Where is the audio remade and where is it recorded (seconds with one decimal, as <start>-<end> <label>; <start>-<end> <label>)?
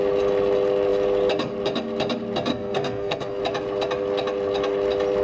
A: 0.0-2.5 recorded; 2.5-3.4 remade; 3.4-5.2 recorded